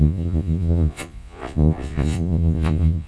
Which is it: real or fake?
fake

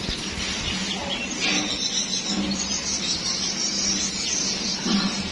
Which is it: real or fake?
real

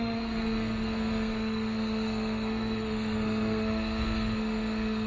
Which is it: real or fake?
fake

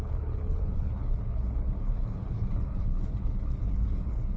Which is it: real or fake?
fake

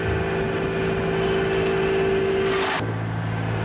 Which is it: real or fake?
real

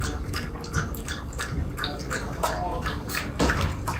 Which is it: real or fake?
fake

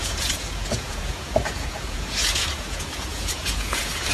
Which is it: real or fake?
fake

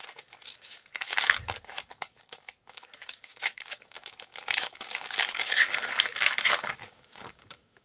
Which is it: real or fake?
fake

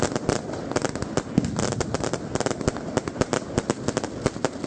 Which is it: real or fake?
real